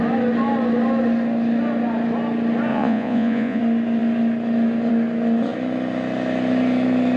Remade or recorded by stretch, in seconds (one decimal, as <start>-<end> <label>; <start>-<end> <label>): 0.0-2.7 recorded; 2.7-3.6 remade; 3.6-7.2 recorded